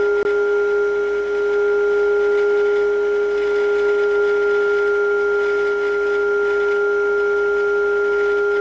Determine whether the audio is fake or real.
real